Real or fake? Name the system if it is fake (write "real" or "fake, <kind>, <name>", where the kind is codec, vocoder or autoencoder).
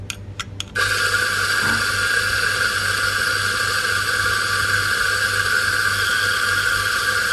real